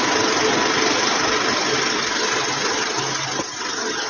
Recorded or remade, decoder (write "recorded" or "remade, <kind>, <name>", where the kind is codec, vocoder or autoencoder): recorded